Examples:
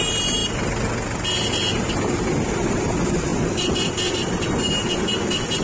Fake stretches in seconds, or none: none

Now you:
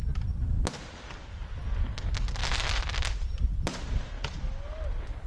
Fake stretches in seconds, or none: none